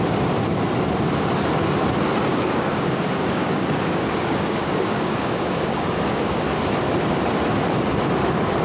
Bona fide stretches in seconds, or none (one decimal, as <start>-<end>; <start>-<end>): 0.0-2.3; 6.4-8.6